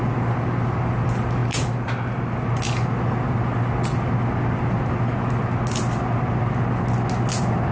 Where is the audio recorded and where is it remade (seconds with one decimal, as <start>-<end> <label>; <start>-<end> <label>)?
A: 0.0-7.7 recorded